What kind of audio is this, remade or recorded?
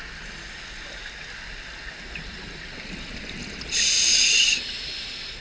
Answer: recorded